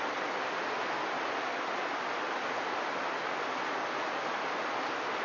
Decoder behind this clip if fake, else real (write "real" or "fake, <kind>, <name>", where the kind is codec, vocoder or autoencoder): real